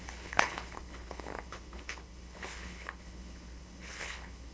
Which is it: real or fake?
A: fake